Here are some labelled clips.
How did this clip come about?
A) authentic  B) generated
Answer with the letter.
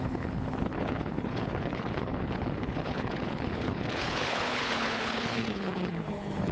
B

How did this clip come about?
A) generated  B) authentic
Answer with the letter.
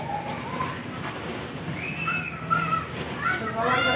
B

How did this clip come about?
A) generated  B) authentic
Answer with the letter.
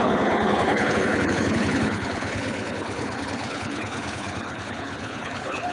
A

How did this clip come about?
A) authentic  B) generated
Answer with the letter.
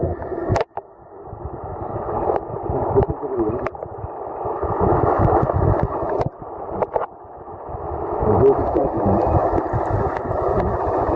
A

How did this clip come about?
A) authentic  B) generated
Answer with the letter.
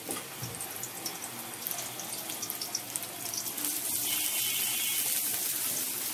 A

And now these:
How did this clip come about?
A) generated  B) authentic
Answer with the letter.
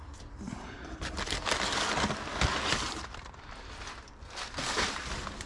B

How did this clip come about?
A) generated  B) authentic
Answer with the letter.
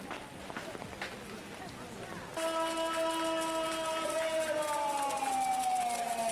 B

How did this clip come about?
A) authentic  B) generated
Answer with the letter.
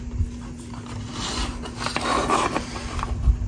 A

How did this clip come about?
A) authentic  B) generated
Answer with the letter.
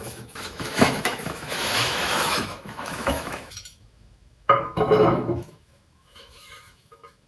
B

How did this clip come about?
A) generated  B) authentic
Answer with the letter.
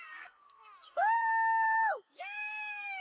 A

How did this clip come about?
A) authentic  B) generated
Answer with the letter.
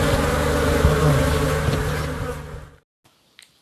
A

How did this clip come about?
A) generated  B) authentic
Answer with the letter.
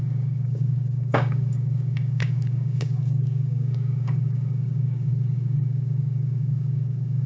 A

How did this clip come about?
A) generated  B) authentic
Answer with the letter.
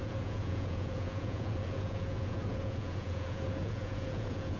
A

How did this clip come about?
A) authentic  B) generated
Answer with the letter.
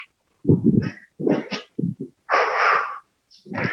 A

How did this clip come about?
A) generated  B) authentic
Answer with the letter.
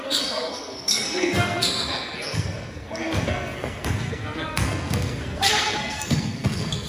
A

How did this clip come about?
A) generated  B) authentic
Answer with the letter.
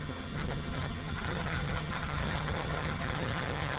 A